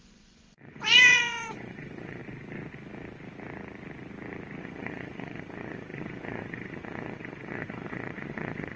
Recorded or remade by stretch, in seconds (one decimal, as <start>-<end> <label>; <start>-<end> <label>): 0.0-2.2 remade; 2.2-4.6 recorded; 4.6-8.8 remade